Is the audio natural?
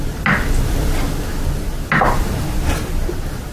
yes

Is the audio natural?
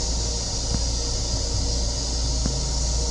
yes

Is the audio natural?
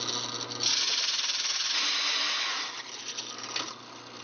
yes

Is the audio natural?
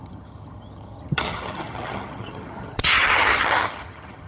no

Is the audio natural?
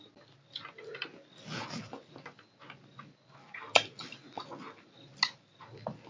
yes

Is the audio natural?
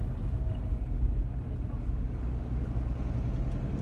yes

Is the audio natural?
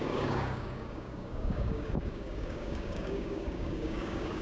no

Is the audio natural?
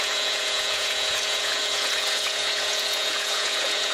no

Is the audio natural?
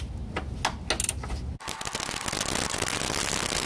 yes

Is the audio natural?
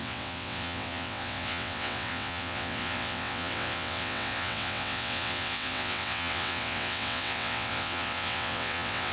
no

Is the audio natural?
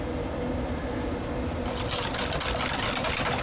yes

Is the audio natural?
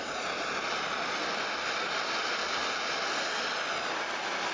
yes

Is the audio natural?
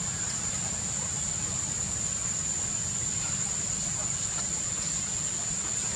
yes